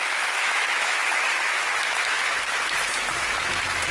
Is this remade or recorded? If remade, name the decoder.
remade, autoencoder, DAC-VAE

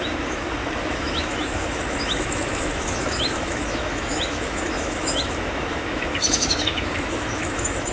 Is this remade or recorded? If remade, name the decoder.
remade, autoencoder, DAC-VAE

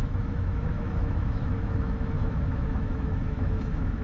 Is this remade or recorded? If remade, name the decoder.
remade, autoencoder, DAC-VAE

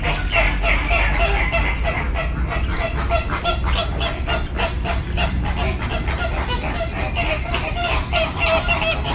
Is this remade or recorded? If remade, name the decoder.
recorded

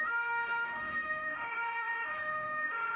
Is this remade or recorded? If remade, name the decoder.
remade, autoencoder, DAC-VAE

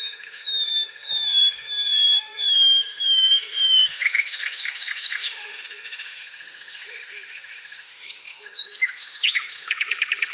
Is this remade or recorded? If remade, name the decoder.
remade, autoencoder, DAC-VAE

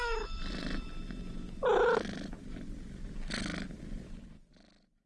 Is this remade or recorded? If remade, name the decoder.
recorded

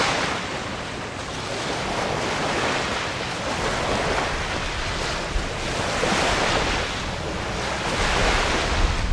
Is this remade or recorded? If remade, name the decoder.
recorded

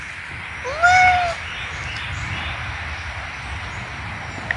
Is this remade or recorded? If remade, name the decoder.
recorded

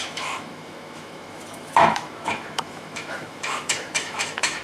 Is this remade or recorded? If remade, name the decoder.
remade, autoencoder, DAC-VAE